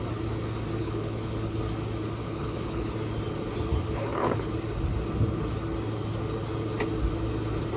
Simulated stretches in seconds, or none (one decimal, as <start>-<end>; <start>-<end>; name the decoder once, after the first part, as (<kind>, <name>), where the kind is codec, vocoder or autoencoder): 0.8-1.6 (codec, HILCodec); 2.2-2.9; 3.7-4.5